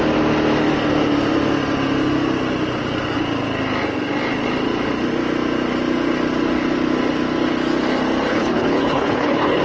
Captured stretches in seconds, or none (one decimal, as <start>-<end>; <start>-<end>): 0.0-8.3